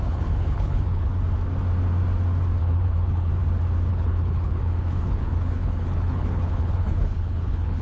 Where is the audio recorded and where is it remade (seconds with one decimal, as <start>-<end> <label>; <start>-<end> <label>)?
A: 0.0-1.1 remade; 1.1-2.6 recorded; 2.6-3.3 remade; 3.3-3.9 recorded; 3.9-7.8 remade